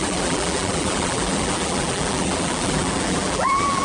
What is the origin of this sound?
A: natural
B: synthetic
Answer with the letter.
B